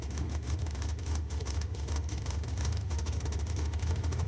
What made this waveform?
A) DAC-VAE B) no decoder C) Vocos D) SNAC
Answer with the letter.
A